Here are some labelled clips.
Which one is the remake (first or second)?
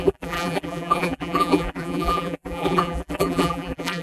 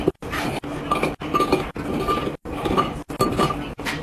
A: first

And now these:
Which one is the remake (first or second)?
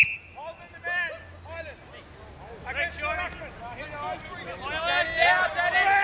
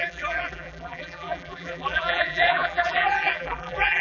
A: second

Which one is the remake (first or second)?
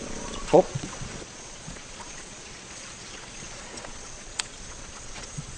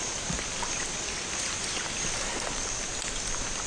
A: first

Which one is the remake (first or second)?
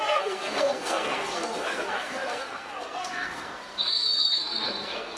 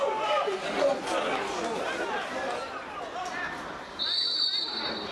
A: first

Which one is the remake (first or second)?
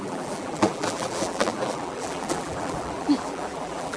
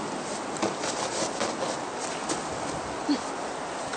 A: first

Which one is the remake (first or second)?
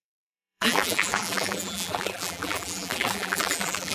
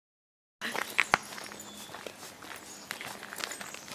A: first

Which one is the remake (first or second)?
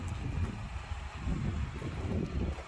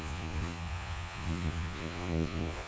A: second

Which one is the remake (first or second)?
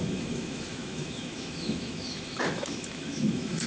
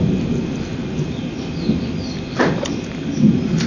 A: first